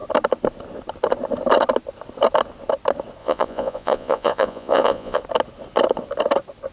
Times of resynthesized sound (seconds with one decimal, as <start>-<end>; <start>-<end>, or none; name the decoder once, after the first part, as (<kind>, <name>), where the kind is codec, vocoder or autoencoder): 3.2-5.2 (vocoder, Vocos)